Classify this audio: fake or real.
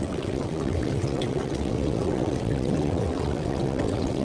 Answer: fake